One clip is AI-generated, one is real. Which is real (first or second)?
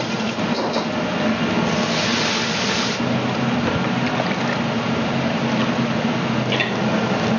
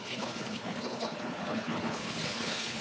first